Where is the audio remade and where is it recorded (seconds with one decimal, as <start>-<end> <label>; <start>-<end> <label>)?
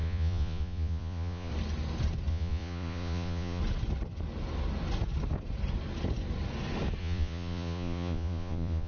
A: 0.0-1.5 remade; 1.5-2.3 recorded; 2.3-3.6 remade; 3.6-7.0 recorded; 7.0-8.9 remade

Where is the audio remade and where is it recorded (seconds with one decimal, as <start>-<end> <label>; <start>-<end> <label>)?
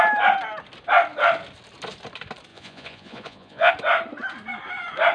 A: 0.0-2.5 recorded; 2.5-3.7 remade; 3.7-5.1 recorded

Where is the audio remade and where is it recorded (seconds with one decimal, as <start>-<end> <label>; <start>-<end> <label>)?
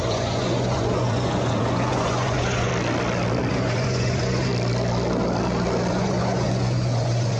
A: 0.0-2.7 remade; 2.7-3.5 recorded; 3.5-4.5 remade; 4.5-5.9 recorded; 5.9-7.4 remade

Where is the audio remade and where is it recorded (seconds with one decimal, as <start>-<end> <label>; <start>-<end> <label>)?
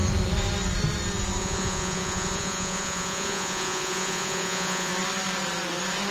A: 0.0-1.4 recorded; 1.4-4.9 remade; 4.9-6.1 recorded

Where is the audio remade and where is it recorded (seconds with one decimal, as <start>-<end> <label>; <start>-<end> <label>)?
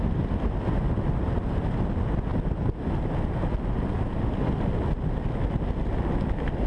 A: 0.0-6.7 recorded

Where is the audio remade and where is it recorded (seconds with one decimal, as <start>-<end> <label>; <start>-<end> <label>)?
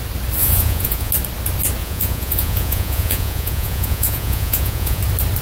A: 0.0-0.4 recorded; 0.4-1.1 remade; 1.1-1.8 recorded; 1.8-5.0 remade; 5.0-5.4 recorded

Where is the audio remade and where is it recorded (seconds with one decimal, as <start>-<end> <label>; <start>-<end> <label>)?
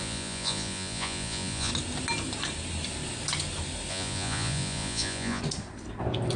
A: 0.0-1.7 remade; 1.7-3.9 recorded; 3.9-5.4 remade; 5.4-6.4 recorded